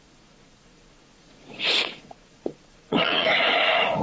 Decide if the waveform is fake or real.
fake